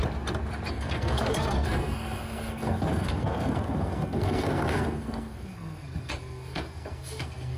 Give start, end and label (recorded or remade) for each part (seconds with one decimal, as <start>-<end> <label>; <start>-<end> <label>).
0.0-0.7 recorded; 0.7-7.6 remade